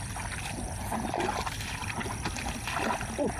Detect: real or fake real